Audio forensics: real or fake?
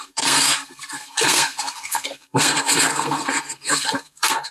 fake